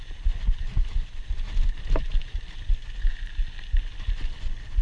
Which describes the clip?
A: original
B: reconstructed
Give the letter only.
A